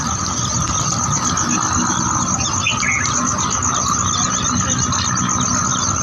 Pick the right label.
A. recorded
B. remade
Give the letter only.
A